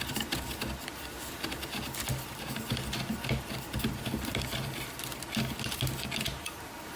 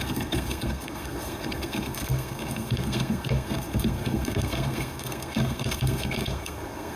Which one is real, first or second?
first